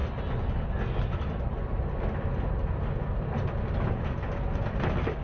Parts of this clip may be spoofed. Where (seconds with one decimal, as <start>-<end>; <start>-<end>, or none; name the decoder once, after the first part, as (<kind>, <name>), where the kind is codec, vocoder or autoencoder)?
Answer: none